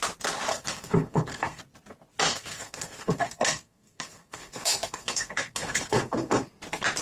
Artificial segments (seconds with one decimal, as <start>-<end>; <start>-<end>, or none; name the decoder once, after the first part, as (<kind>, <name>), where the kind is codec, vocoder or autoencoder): 0.5-1.6 (codec, SNAC); 2.3-6.5